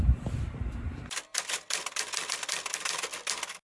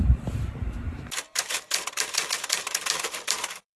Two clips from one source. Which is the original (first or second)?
first